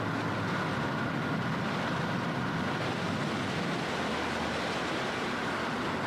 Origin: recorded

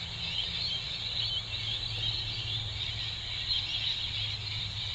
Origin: recorded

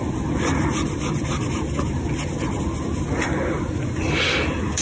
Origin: recorded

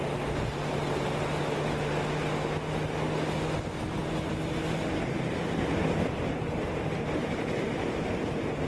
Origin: recorded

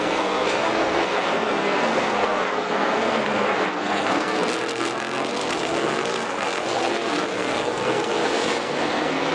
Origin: remade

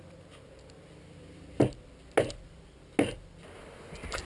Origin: recorded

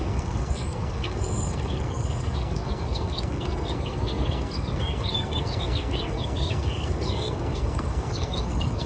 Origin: remade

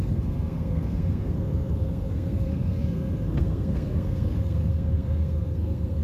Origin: remade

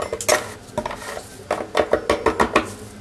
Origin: recorded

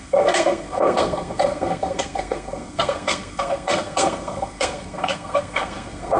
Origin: remade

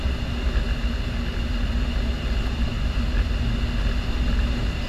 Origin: recorded